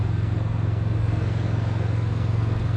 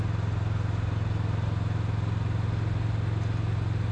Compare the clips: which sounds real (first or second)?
second